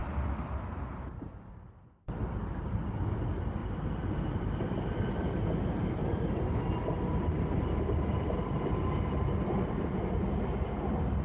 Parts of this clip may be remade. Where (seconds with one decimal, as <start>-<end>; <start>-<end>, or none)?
none